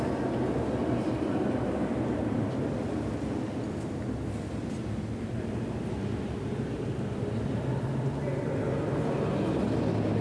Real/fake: real